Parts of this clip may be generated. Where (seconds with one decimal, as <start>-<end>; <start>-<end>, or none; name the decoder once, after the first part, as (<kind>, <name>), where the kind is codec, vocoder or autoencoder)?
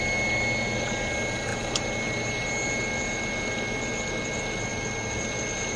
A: none